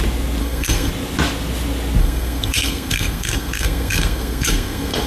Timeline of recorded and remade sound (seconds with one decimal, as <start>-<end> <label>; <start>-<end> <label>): 0.0-0.4 recorded; 0.4-0.9 remade; 0.9-2.0 recorded; 2.0-5.1 remade